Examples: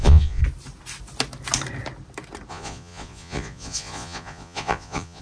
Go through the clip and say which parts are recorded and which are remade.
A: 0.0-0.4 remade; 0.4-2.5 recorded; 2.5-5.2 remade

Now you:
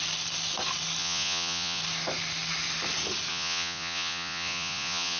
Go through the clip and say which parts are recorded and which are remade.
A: 0.0-1.0 recorded; 1.0-1.8 remade; 1.8-3.3 recorded; 3.3-5.2 remade

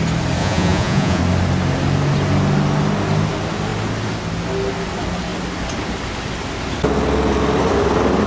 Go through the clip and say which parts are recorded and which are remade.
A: 0.0-0.4 recorded; 0.4-1.2 remade; 1.2-8.3 recorded

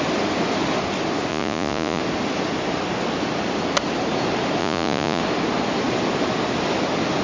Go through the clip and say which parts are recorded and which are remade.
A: 0.0-1.3 recorded; 1.3-2.0 remade; 2.0-4.6 recorded; 4.6-5.2 remade; 5.2-7.2 recorded

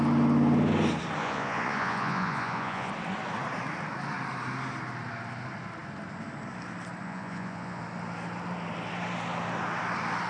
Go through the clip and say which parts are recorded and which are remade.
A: 0.0-1.2 recorded; 1.2-2.9 remade; 2.9-7.0 recorded; 7.0-7.8 remade; 7.8-10.3 recorded

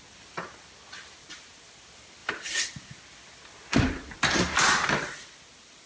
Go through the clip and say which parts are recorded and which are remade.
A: 0.0-5.9 recorded